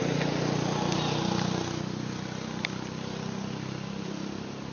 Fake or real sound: real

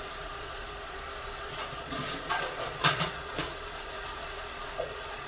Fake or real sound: fake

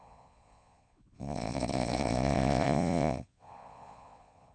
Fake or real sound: fake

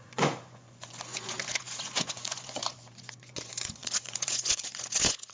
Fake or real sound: fake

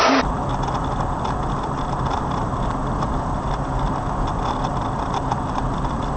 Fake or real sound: real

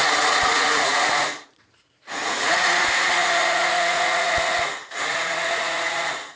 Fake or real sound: fake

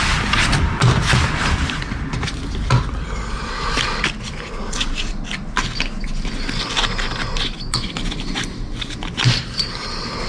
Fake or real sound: real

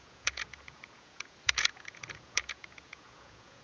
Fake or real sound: fake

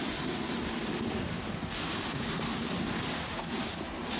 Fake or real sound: real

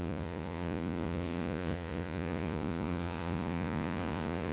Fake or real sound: fake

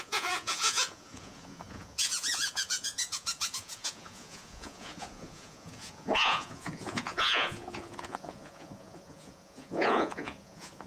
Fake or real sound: fake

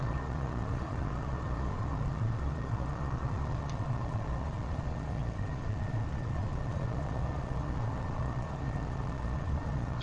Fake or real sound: fake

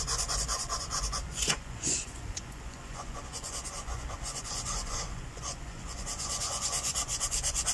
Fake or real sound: fake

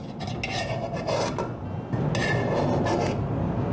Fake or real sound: real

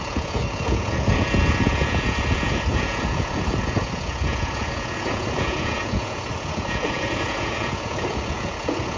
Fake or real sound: fake